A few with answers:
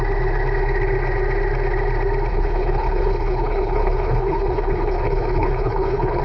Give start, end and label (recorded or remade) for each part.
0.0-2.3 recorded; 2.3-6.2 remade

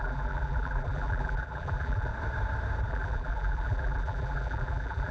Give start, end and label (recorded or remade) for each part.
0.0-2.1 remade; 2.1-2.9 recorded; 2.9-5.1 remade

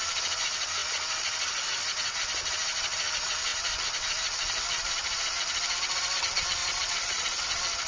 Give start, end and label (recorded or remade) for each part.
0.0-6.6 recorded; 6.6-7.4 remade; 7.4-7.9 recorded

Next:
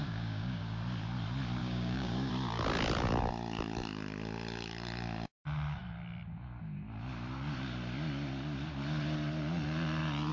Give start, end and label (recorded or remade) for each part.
0.0-0.6 remade; 0.6-1.6 recorded; 1.6-2.3 remade; 2.3-10.3 recorded